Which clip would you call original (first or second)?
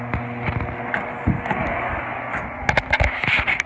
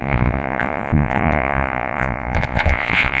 first